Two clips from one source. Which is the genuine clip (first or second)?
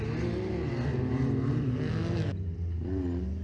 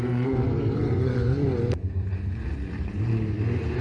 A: first